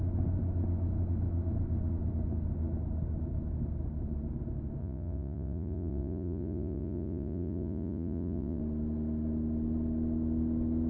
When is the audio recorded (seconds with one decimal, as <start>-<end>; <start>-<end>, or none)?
0.0-4.8; 8.6-10.9